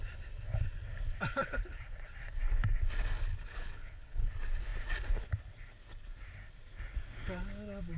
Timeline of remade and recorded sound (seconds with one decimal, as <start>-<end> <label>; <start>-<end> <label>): 0.0-1.3 recorded; 1.3-1.8 remade; 1.8-3.3 recorded; 3.3-4.3 remade; 4.3-8.0 recorded